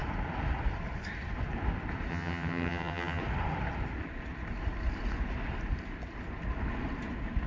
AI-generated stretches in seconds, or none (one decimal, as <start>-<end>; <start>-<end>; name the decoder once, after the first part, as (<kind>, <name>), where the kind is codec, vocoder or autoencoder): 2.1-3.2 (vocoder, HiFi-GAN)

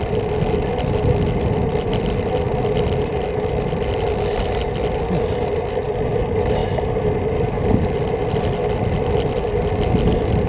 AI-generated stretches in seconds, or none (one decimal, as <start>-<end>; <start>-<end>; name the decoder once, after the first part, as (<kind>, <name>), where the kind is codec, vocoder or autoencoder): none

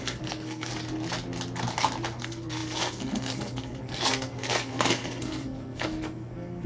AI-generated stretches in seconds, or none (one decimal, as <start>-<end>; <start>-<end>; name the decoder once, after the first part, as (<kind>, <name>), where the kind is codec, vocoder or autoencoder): 0.0-0.7 (codec, SNAC); 2.2-6.7